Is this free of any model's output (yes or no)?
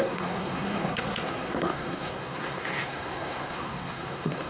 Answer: no